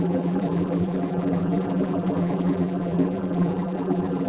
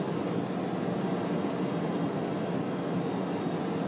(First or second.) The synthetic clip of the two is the first